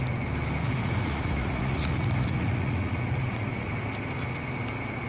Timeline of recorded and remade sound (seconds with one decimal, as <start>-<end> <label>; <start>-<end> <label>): 0.0-0.6 recorded; 0.6-3.7 remade; 3.7-5.1 recorded